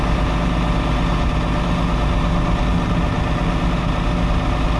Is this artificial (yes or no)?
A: no